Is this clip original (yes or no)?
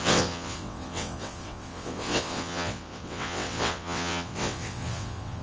no